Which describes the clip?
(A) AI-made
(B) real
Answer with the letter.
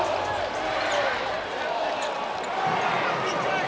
B